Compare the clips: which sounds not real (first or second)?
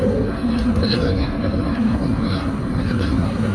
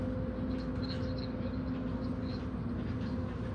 first